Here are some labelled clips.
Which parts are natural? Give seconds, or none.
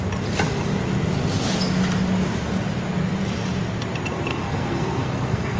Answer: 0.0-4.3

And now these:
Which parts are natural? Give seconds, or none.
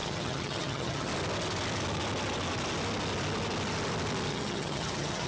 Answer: 1.1-4.3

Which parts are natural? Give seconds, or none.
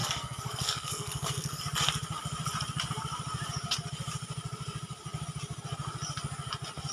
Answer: 1.6-6.9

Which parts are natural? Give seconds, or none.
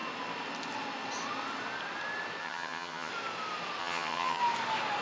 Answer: 0.0-2.4; 3.1-3.8; 4.4-5.0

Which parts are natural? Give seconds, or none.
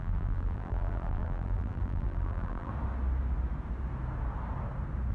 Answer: 2.7-5.1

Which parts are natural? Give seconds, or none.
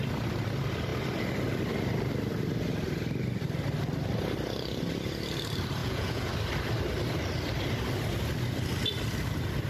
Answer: 0.0-5.8; 6.3-9.7